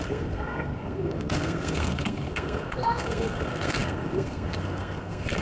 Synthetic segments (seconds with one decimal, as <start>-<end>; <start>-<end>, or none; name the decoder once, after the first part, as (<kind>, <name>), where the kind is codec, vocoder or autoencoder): 0.0-5.4 (codec, SNAC)